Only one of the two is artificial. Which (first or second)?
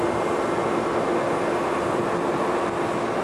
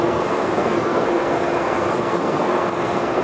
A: second